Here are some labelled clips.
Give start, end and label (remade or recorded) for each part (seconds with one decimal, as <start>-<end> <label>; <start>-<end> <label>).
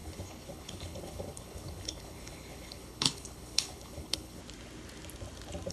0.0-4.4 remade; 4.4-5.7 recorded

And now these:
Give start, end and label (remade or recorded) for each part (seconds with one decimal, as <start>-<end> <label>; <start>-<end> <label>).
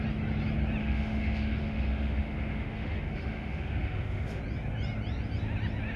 0.0-0.8 recorded; 0.8-4.4 remade; 4.4-6.0 recorded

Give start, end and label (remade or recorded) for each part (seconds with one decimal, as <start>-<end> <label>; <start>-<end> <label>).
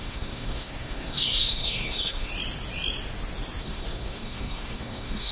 0.0-2.3 remade; 2.3-3.6 recorded; 3.6-5.3 remade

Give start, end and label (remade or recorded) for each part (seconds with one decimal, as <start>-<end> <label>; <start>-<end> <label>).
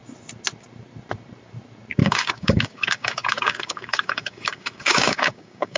0.0-2.0 recorded; 2.0-5.8 remade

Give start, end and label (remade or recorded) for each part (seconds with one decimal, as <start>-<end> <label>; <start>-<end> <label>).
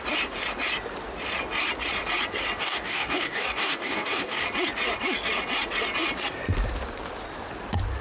0.0-2.6 recorded; 2.6-4.4 remade; 4.4-8.0 recorded